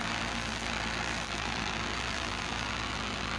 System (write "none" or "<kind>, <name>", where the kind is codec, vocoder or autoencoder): vocoder, BigVGAN v2